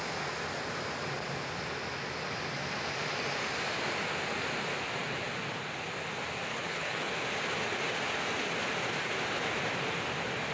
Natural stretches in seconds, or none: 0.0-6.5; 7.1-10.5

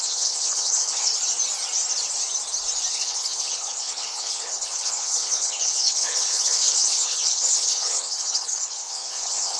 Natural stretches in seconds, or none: 1.1-2.9

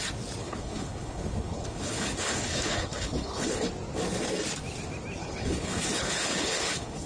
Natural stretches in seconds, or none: 0.0-0.4; 3.7-5.2